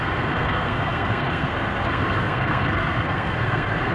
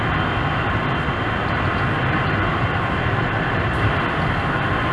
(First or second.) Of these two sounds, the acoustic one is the second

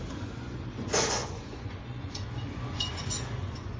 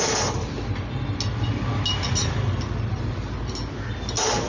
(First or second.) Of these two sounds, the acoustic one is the second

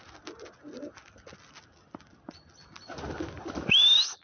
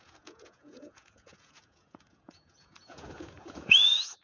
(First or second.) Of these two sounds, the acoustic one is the first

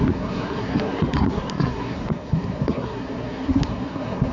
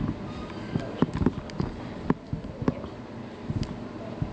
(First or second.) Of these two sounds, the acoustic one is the second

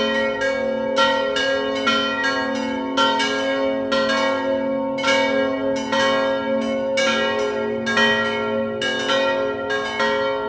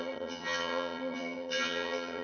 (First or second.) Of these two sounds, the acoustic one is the first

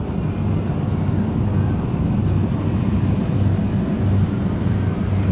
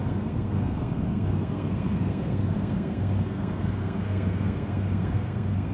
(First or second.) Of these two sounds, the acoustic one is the first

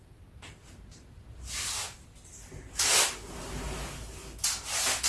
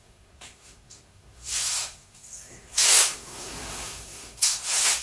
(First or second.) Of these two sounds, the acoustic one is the first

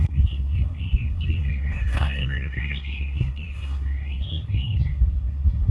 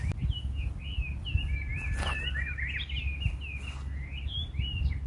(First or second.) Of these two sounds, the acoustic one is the second